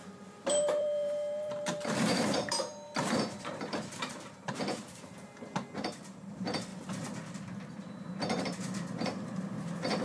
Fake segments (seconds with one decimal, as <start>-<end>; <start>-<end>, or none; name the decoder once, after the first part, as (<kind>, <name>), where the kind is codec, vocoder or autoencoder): 0.0-6.7 (vocoder, BigVGAN v2); 7.7-10.0